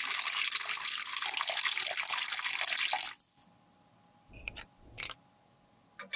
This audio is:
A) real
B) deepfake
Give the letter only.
A